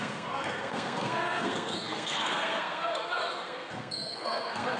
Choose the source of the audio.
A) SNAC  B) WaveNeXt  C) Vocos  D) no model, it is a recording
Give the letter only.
A